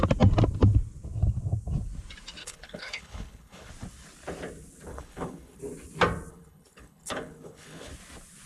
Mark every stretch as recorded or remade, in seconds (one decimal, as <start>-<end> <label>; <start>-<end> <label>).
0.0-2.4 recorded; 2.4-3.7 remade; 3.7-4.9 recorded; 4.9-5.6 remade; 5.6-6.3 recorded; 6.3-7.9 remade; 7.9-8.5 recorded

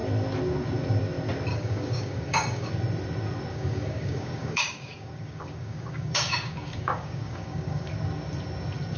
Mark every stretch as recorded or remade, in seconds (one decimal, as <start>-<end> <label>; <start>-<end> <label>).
0.0-1.5 recorded; 1.5-2.7 remade; 2.7-3.5 recorded; 3.5-7.9 remade; 7.9-9.0 recorded

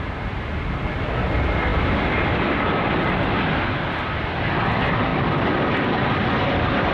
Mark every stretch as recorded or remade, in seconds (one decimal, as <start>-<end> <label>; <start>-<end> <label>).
0.0-6.9 recorded